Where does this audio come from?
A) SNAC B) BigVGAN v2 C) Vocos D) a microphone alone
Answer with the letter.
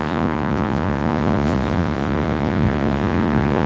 C